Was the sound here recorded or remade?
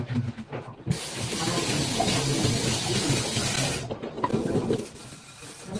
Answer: recorded